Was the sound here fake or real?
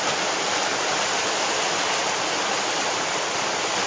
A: real